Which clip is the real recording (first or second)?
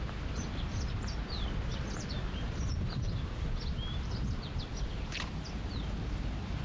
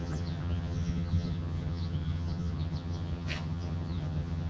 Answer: first